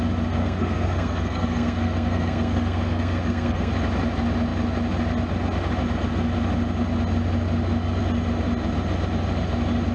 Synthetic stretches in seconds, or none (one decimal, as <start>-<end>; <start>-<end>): 0.4-3.7